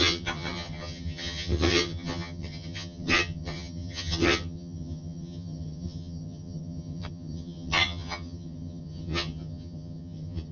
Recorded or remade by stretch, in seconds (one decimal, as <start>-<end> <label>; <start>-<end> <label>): 0.0-10.5 remade